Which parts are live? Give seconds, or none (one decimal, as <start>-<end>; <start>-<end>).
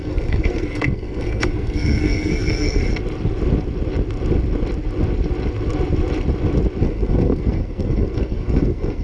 2.8-6.8